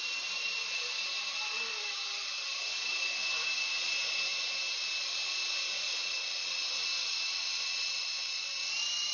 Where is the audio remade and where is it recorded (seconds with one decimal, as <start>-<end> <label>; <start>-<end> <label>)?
0.0-9.1 recorded